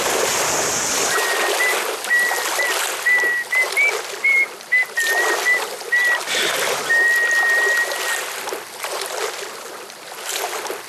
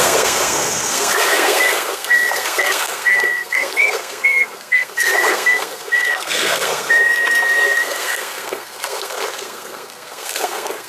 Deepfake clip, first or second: second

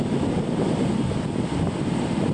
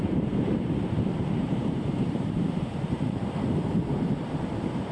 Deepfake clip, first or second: second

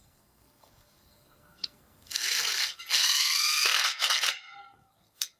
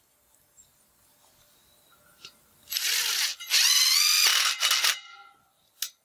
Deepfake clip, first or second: first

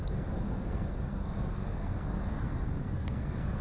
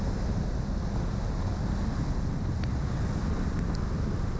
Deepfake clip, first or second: first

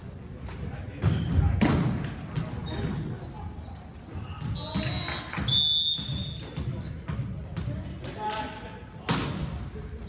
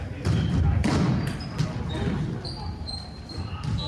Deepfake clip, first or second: second